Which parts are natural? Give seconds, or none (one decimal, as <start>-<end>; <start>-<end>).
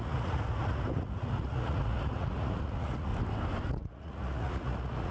3.1-3.7